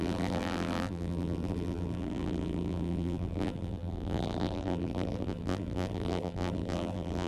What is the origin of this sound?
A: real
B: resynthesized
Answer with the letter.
B